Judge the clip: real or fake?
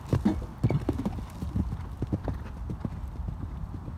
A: real